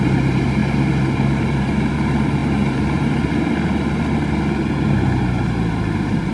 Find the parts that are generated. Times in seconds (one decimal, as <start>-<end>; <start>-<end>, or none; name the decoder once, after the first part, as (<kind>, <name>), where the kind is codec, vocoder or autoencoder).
0.0-6.3 (vocoder, BigVGAN v2)